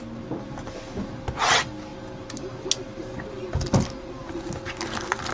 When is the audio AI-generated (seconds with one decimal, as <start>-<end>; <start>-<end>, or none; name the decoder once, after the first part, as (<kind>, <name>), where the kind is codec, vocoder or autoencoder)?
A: none